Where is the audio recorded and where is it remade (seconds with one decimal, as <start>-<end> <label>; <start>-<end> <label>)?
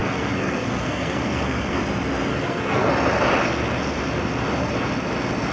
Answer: 0.0-1.8 remade; 1.8-2.3 recorded; 2.3-2.9 remade; 2.9-5.5 recorded